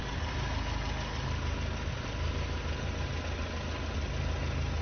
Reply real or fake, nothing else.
real